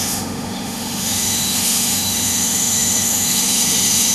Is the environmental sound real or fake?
fake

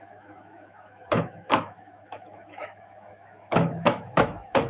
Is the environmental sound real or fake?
fake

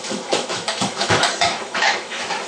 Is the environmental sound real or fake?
fake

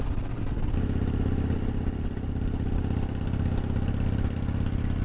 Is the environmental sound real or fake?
real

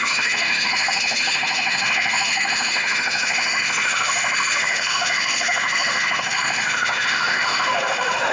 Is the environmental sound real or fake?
fake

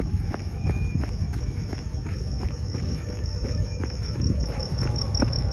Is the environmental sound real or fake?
fake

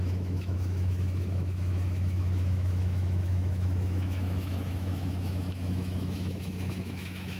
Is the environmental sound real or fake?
fake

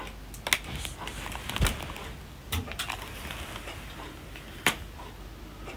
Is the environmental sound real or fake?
real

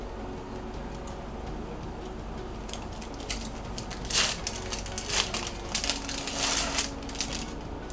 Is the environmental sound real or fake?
real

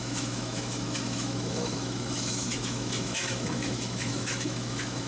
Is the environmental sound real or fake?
fake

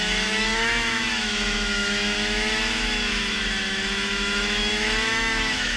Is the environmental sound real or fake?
fake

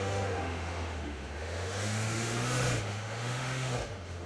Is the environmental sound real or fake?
fake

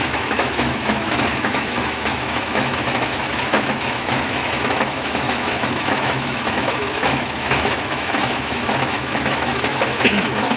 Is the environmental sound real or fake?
fake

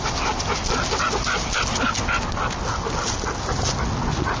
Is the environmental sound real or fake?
real